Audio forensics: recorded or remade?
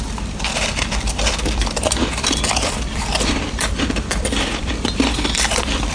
remade